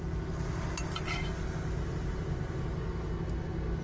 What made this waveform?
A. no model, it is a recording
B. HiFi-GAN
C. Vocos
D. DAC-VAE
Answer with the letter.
A